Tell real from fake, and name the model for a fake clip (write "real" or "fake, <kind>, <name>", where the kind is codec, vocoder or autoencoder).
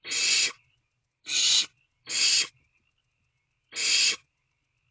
real